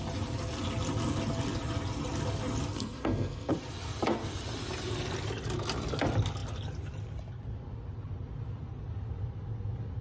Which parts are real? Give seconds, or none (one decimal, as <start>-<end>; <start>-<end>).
0.0-2.7; 3.5-10.0